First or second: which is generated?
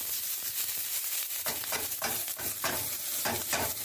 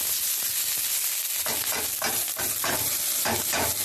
first